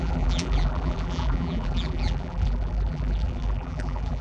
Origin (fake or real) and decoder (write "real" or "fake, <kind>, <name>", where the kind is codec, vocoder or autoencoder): fake, vocoder, BigVGAN v2